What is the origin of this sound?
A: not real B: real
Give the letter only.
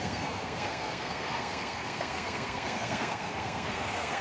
A